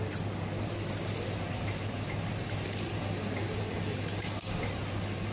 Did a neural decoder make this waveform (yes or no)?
yes